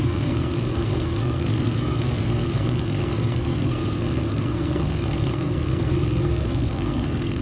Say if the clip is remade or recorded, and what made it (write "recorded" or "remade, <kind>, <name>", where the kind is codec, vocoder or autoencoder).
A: remade, codec, SNAC